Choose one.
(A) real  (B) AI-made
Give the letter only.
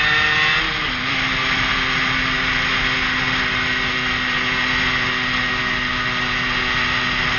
A